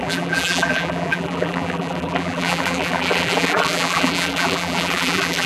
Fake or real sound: fake